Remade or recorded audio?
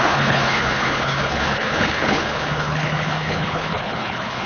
remade